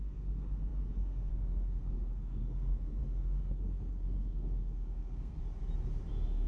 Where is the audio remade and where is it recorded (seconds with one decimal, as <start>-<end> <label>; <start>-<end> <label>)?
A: 0.0-5.4 remade; 5.4-6.1 recorded; 6.1-6.5 remade